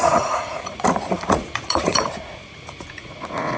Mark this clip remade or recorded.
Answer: remade